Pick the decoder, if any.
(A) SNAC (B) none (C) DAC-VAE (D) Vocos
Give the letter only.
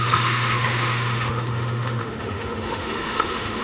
C